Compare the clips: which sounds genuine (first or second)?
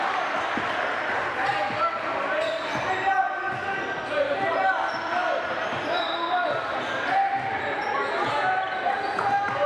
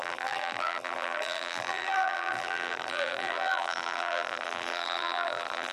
first